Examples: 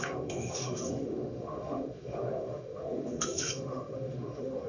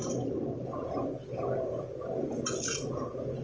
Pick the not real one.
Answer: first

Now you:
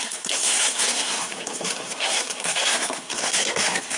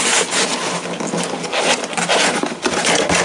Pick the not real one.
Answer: first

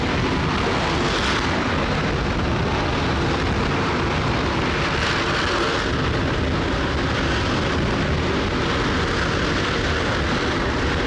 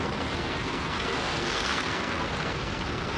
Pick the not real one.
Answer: second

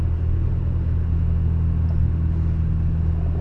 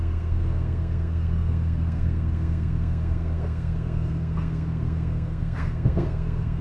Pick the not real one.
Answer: second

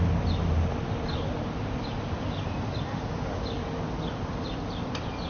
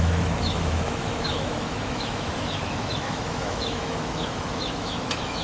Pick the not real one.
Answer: second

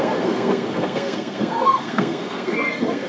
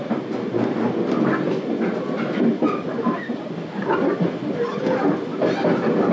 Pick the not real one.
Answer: first